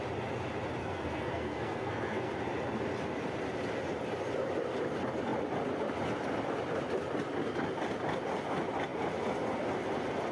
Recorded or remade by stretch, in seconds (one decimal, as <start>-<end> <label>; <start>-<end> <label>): 0.0-0.8 recorded; 0.8-2.3 remade; 2.3-10.3 recorded